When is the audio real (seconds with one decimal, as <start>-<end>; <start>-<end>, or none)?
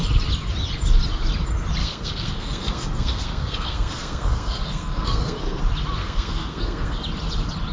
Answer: 0.0-1.8; 5.6-6.0; 7.0-7.7